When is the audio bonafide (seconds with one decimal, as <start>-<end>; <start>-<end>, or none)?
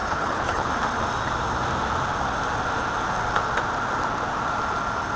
0.7-5.2